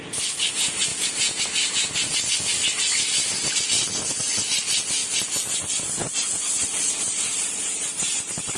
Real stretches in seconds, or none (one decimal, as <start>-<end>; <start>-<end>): 0.0-0.9; 1.4-8.6